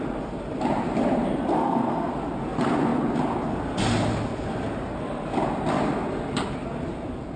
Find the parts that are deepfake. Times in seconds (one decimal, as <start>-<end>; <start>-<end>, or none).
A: 1.5-2.1